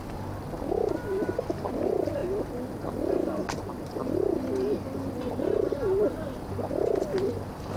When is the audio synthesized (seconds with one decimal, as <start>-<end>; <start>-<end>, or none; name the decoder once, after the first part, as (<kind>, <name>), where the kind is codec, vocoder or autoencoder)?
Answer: none